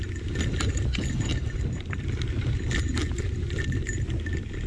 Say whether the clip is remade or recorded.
recorded